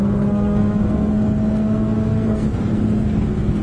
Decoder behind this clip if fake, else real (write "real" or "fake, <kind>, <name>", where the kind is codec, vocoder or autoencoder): fake, codec, SNAC